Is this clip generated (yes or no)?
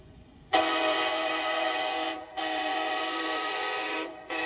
yes